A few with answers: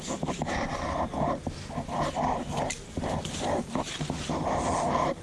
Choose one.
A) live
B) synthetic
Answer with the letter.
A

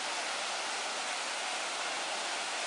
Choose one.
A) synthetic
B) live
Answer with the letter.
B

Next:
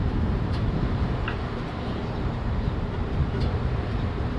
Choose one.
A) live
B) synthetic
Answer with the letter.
B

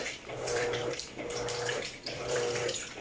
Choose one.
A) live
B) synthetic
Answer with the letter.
B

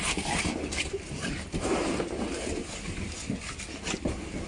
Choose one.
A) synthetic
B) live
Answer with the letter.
B